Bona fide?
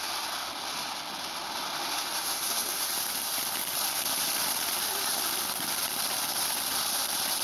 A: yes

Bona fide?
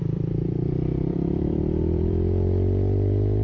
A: no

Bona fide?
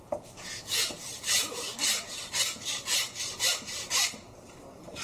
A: no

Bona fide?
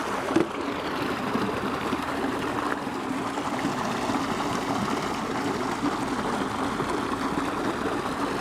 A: yes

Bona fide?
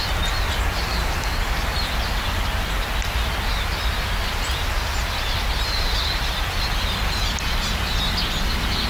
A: yes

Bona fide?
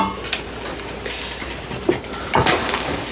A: yes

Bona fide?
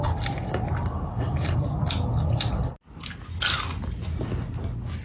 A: yes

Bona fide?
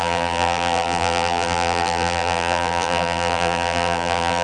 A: no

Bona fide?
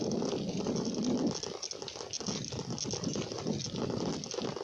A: yes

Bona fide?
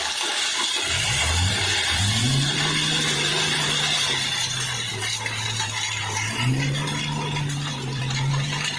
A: no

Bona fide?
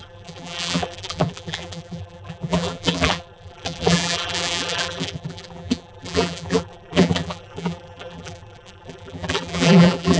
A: no